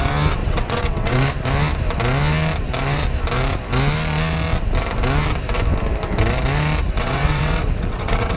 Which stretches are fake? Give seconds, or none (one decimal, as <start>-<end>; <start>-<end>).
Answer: 0.4-1.3; 7.0-8.4